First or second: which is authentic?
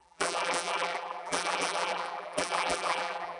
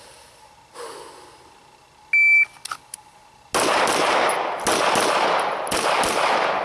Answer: second